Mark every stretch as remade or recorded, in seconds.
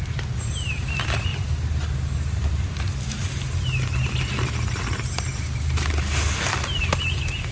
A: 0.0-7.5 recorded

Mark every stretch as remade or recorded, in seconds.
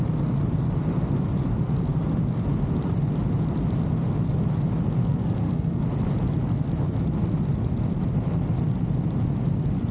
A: 0.0-5.0 recorded; 5.0-5.8 remade; 5.8-9.9 recorded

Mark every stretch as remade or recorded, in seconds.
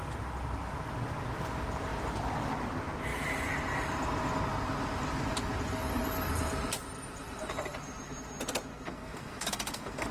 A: 0.0-8.7 recorded; 8.7-10.1 remade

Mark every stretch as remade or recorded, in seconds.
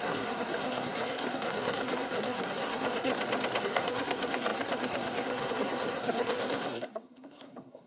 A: 0.0-3.1 remade; 3.1-3.6 recorded; 3.6-7.9 remade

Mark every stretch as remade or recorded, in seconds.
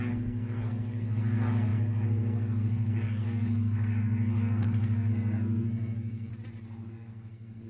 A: 0.0-6.3 remade; 6.3-6.9 recorded; 6.9-7.7 remade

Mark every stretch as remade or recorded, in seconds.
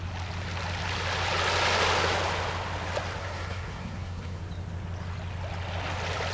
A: 0.0-3.2 recorded; 3.2-4.4 remade; 4.4-6.3 recorded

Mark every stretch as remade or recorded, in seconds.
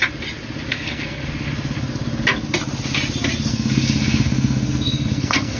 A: 0.0-0.7 recorded; 0.7-1.3 remade; 1.3-3.5 recorded; 3.5-5.6 remade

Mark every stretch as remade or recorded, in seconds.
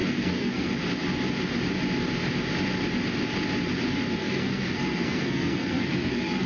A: 0.0-0.7 remade; 0.7-4.2 recorded; 4.2-6.5 remade